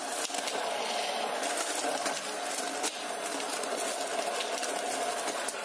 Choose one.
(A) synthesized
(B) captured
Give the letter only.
B